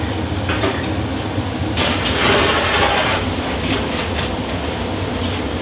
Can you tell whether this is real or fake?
real